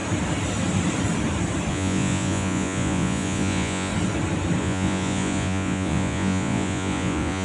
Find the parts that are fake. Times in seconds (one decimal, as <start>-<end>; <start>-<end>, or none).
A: 1.7-3.9; 4.6-7.4